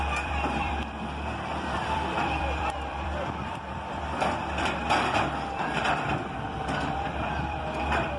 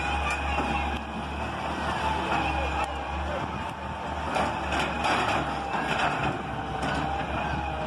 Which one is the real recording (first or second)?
second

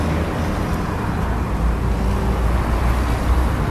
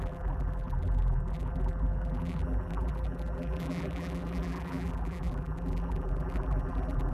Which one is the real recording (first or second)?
first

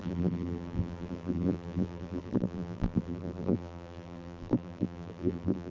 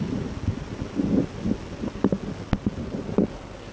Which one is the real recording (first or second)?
second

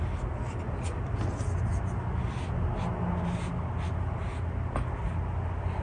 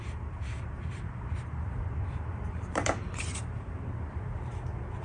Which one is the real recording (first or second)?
first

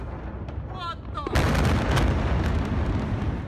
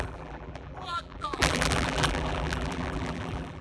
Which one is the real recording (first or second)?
first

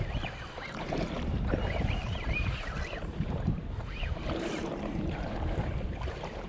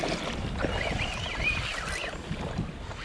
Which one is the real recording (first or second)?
second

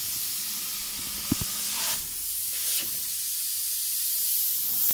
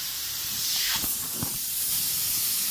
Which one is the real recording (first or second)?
first